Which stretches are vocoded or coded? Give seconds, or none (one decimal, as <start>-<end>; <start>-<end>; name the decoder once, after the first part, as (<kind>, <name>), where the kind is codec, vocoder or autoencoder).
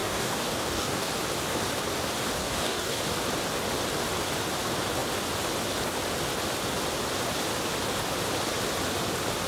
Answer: 0.0-1.1 (codec, DAC); 2.4-3.0